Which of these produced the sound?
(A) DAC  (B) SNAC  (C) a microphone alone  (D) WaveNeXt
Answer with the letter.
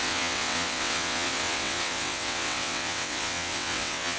D